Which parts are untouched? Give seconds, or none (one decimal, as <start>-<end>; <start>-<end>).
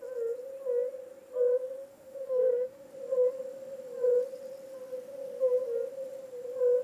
0.0-1.9; 2.9-6.8